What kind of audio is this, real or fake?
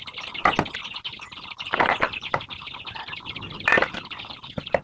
real